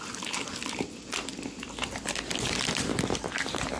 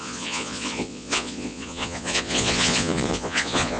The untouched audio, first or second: first